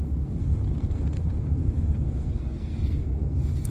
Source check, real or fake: fake